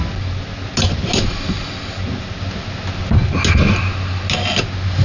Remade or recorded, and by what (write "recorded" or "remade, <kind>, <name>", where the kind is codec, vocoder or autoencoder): recorded